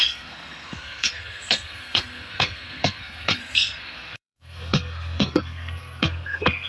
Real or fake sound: fake